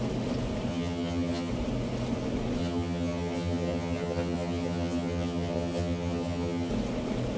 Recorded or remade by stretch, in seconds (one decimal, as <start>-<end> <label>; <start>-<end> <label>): 0.0-0.7 recorded; 0.7-1.5 remade; 1.5-2.6 recorded; 2.6-6.7 remade; 6.7-7.4 recorded